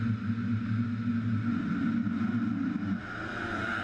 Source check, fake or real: real